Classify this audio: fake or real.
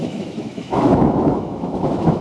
fake